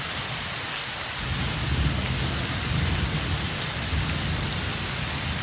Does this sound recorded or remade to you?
recorded